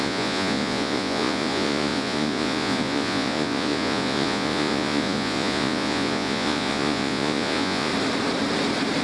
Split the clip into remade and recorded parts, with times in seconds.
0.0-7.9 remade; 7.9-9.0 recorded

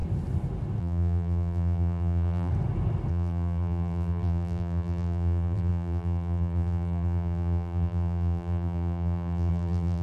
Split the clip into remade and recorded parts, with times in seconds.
0.0-0.8 recorded; 0.8-2.5 remade; 2.5-3.1 recorded; 3.1-10.0 remade

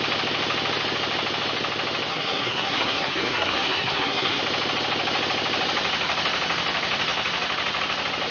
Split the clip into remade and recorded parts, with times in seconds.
0.0-2.1 recorded; 2.1-4.4 remade; 4.4-8.3 recorded

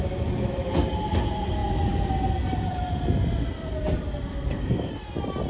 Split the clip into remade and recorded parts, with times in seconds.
0.0-4.3 recorded; 4.3-4.9 remade; 4.9-5.5 recorded